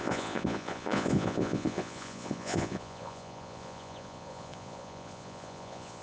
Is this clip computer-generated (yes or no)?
yes